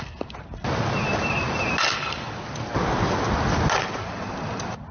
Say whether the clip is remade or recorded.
recorded